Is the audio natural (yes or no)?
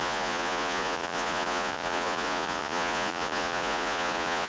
no